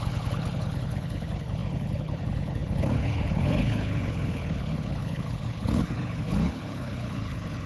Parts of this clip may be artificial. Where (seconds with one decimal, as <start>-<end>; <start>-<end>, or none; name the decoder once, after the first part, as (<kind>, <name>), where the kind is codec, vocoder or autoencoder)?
0.0-7.7 (codec, HILCodec)